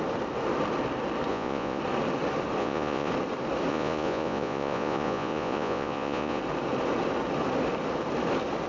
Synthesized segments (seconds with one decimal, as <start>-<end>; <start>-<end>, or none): 1.3-1.8; 2.6-3.1; 3.7-6.4